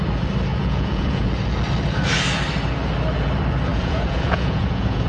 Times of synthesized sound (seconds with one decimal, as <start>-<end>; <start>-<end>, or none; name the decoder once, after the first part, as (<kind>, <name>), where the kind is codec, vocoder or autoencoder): 0.5-1.3 (vocoder, Vocos); 3.7-5.1